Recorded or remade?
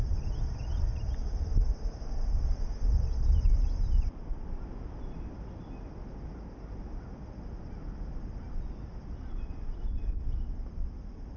recorded